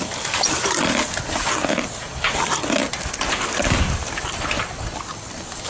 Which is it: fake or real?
real